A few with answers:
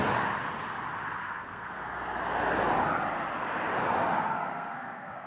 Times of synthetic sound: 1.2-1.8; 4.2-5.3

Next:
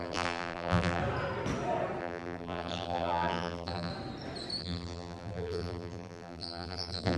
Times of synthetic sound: 0.0-1.0; 2.0-3.9; 4.6-7.2